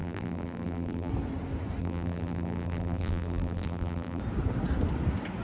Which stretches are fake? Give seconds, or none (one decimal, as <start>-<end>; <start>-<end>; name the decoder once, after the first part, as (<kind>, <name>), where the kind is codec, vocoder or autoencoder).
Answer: 0.0-1.1 (vocoder, BigVGAN v2); 1.8-4.2